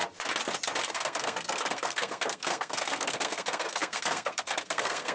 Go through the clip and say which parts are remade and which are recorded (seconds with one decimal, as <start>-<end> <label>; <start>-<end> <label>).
0.0-0.9 recorded; 0.9-5.1 remade

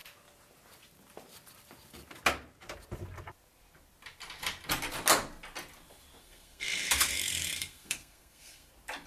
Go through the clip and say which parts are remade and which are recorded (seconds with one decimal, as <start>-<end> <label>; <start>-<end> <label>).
0.0-6.2 recorded; 6.2-8.7 remade; 8.7-9.1 recorded

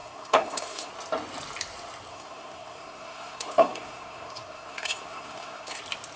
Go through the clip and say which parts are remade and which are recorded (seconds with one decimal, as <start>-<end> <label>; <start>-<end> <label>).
0.0-0.9 remade; 0.9-2.1 recorded; 2.1-5.8 remade; 5.8-6.2 recorded

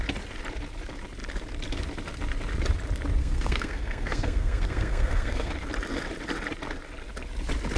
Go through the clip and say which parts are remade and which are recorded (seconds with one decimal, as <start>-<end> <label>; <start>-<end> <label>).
0.0-3.2 recorded; 3.2-5.5 remade; 5.5-7.8 recorded

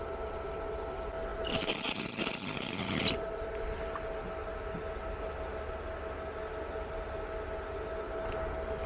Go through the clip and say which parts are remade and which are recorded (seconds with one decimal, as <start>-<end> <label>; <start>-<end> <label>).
0.0-8.9 recorded

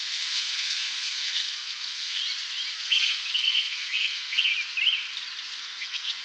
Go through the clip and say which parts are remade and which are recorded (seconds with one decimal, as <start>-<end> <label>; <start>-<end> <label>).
0.0-2.2 remade; 2.2-2.7 recorded; 2.7-4.5 remade; 4.5-5.6 recorded; 5.6-6.2 remade